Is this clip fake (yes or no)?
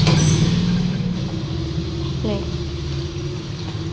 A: no